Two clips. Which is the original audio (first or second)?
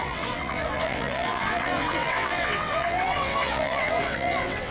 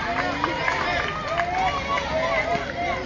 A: second